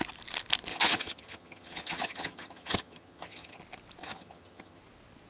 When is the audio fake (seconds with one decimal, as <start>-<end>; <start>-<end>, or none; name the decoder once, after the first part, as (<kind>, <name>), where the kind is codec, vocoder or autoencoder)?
0.7-3.6 (vocoder, HiFi-GAN); 4.0-4.8